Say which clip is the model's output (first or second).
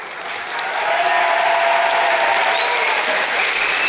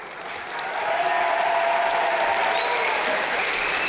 second